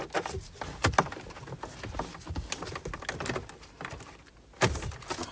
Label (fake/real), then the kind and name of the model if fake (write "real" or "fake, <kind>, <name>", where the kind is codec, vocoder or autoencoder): real